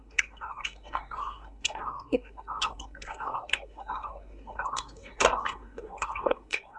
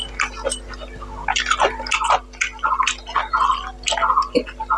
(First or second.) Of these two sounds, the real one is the second